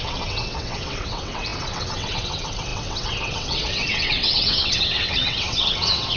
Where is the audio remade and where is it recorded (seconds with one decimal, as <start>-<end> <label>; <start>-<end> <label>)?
0.0-6.2 remade